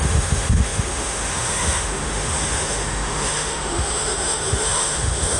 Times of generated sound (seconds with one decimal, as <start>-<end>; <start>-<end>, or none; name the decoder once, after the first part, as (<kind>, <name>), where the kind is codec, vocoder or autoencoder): 0.0-5.4 (autoencoder, DAC-VAE)